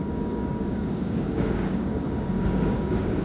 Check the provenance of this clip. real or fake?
fake